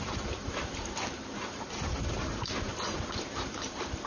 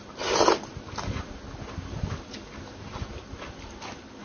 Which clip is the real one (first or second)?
second